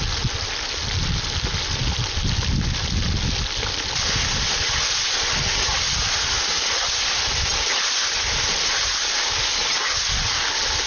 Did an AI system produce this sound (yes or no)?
no